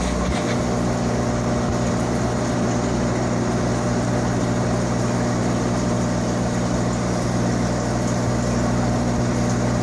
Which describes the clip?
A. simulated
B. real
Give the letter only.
B